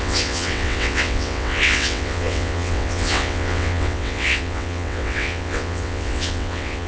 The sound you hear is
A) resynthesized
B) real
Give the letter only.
A